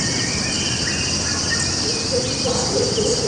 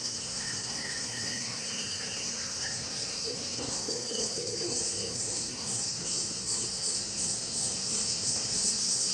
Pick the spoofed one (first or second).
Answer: second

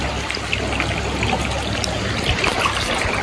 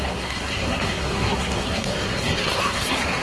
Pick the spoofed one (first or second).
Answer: second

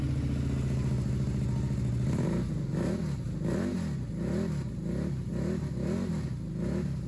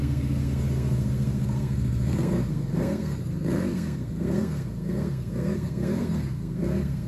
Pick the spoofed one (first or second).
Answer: second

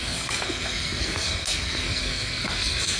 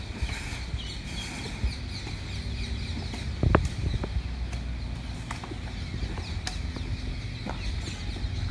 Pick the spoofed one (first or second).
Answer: first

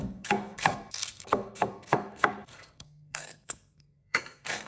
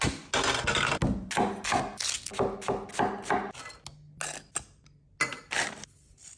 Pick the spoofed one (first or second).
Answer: first